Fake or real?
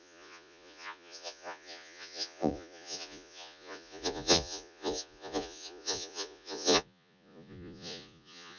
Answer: fake